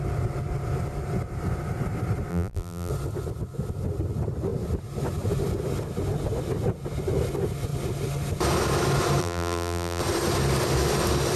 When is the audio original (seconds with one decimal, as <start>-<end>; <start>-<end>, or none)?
0.0-2.3; 2.9-9.2; 10.0-11.4

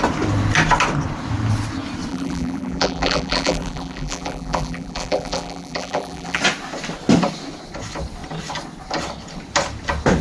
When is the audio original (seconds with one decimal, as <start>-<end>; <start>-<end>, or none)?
0.0-2.1; 6.4-10.2

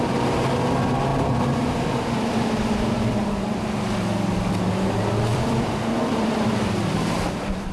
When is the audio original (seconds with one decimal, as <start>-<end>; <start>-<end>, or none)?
0.0-1.1; 3.6-5.3; 7.2-7.7

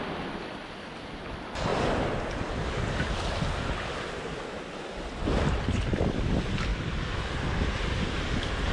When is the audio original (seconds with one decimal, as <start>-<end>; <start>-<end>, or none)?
0.0-1.7; 2.7-6.7; 7.9-8.7

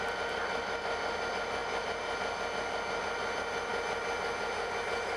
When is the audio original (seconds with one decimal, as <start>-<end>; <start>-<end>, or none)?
0.0-5.2

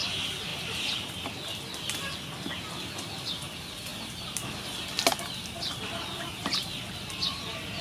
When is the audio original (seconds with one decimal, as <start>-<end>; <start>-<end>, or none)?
0.0-7.8

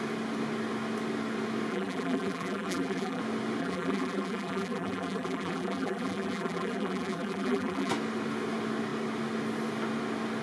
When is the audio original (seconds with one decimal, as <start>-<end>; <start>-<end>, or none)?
0.0-1.7; 3.2-3.6; 7.9-10.4